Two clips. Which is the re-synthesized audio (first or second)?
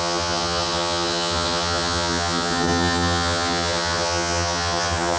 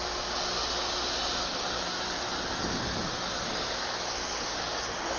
first